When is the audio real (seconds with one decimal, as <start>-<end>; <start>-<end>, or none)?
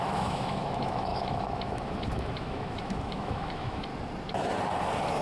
3.9-5.2